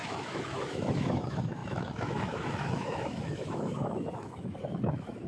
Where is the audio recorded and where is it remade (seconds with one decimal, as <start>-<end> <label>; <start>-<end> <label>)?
0.0-5.3 remade